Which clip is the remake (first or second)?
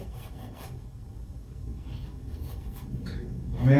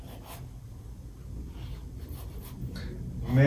first